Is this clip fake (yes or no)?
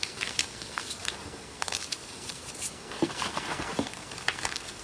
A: yes